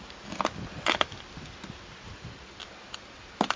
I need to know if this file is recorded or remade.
recorded